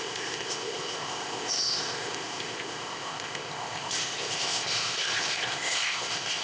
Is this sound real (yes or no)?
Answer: no